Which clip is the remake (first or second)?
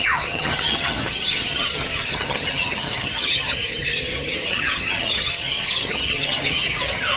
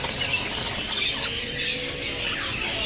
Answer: first